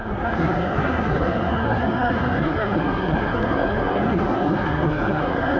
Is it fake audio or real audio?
fake